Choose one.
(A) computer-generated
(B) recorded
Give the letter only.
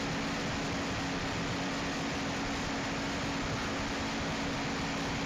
B